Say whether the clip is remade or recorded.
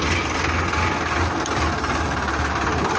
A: recorded